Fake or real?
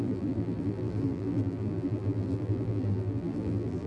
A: fake